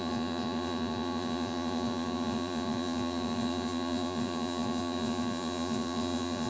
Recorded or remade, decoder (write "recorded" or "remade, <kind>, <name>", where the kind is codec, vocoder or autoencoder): remade, vocoder, Vocos